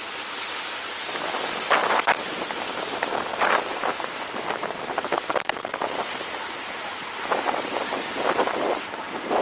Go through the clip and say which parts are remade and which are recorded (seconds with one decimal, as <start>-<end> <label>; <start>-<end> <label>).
0.0-1.8 recorded; 1.8-6.8 remade; 6.8-9.4 recorded